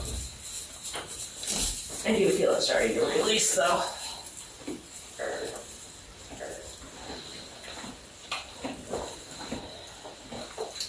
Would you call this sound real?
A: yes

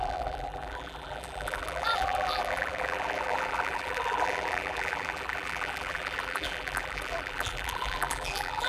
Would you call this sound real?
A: no